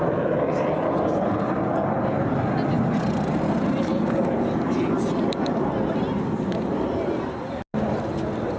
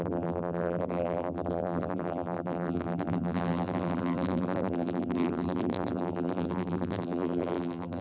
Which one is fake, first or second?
second